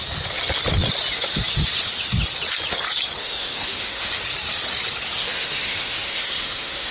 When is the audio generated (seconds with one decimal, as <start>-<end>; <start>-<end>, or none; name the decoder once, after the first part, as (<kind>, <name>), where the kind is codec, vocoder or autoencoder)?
3.2-4.1 (autoencoder, DAC-VAE); 5.2-6.9